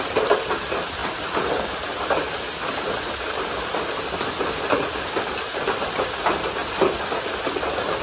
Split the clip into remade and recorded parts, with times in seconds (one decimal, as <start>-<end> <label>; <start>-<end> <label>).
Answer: 0.0-8.0 recorded